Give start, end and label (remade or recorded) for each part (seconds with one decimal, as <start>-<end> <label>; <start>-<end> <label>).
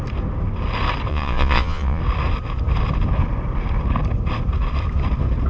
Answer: 0.0-1.1 recorded; 1.1-2.0 remade; 2.0-5.5 recorded